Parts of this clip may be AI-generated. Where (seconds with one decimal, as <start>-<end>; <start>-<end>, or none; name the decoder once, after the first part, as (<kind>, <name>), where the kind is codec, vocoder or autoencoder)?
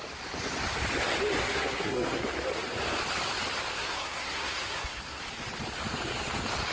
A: 1.4-2.2 (codec, SNAC); 3.7-5.2